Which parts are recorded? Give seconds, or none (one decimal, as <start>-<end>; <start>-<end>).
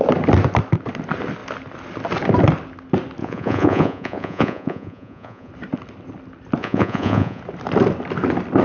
0.0-3.2; 5.5-6.6; 7.4-8.6